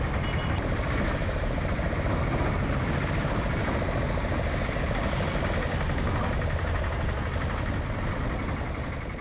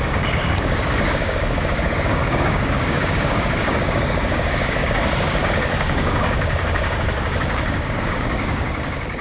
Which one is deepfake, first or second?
second